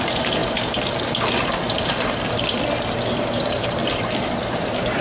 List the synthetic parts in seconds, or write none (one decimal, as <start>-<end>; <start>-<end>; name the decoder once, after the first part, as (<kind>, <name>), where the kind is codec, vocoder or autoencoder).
0.0-0.4 (vocoder, BigVGAN v2); 3.1-3.8; 4.5-5.0